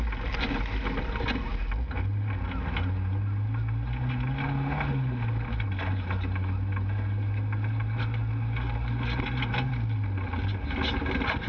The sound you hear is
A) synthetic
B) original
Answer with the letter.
B